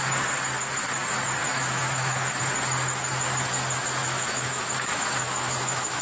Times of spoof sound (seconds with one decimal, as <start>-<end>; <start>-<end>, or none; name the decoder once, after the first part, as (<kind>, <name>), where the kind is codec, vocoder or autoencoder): 1.4-2.4 (autoencoder, DAC-VAE); 4.0-6.0